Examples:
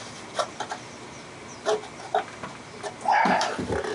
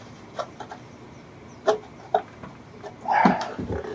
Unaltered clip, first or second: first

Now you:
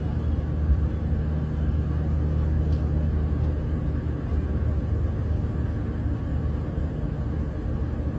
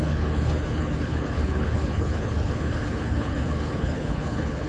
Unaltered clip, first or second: first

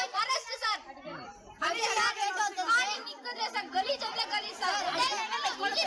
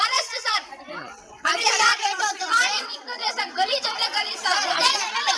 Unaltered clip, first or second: first